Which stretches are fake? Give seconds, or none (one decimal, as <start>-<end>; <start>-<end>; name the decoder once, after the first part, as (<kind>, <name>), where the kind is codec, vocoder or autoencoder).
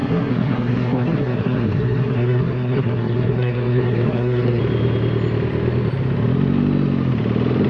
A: 0.0-4.6 (codec, SNAC)